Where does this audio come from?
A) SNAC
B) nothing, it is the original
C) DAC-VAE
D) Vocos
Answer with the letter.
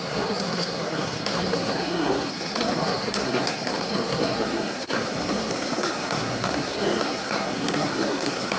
A